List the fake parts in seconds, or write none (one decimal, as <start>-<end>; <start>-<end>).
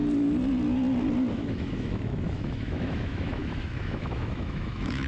1.3-5.1